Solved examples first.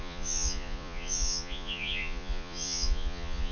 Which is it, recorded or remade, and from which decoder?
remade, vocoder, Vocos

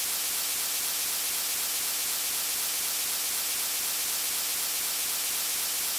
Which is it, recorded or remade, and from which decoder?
recorded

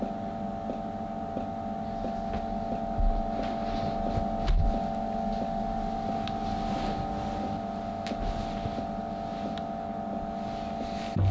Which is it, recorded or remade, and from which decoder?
recorded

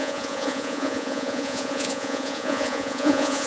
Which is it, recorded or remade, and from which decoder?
remade, vocoder, Vocos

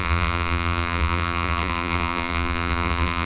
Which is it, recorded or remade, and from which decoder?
remade, vocoder, BigVGAN v2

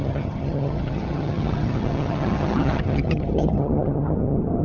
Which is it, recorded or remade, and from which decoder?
remade, vocoder, HiFi-GAN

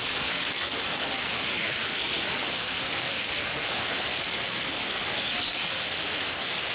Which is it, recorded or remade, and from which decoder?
remade, codec, SNAC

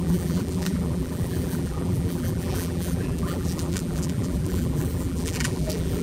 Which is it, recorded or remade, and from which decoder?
remade, vocoder, BigVGAN v2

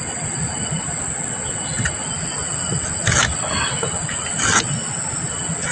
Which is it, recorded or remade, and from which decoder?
recorded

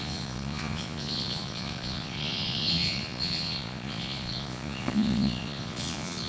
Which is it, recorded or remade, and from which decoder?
remade, vocoder, Vocos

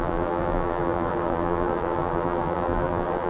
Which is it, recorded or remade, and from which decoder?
remade, vocoder, BigVGAN v2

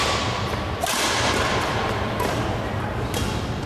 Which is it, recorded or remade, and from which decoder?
recorded